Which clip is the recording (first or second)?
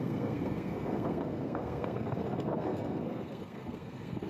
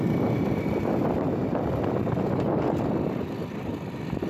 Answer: second